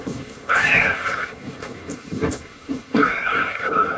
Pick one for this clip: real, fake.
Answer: fake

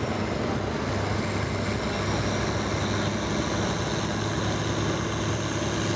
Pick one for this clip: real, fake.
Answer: real